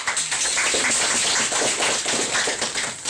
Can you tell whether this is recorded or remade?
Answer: recorded